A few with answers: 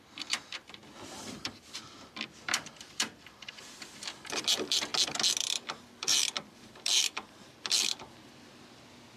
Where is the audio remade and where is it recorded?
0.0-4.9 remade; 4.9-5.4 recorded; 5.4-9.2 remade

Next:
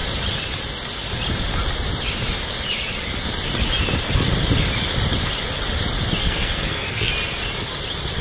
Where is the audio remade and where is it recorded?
0.0-6.2 recorded; 6.2-7.1 remade; 7.1-8.2 recorded

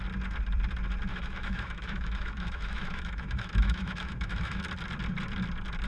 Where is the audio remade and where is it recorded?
0.0-1.1 recorded; 1.1-4.6 remade; 4.6-5.9 recorded

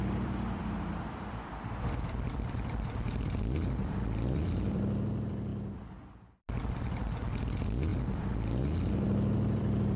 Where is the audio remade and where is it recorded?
0.0-5.5 remade; 5.5-6.7 recorded; 6.7-10.0 remade

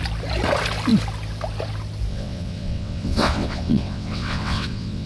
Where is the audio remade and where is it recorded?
0.0-2.1 recorded; 2.1-5.1 remade

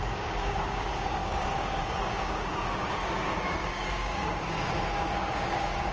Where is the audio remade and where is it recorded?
0.0-5.9 remade

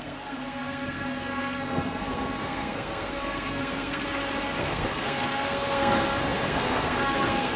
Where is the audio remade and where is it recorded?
0.0-4.0 remade; 4.0-4.6 recorded; 4.6-7.6 remade